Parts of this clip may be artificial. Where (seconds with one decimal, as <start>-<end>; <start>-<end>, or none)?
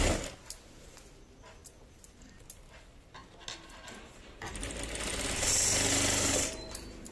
none